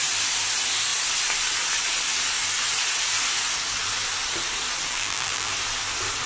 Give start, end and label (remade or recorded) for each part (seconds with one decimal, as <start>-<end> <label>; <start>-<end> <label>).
0.0-4.9 recorded; 4.9-5.5 remade; 5.5-6.3 recorded